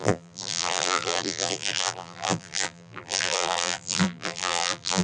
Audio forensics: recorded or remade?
remade